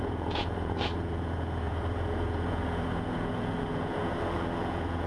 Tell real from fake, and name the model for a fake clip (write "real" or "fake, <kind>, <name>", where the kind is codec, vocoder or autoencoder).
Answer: fake, vocoder, Vocos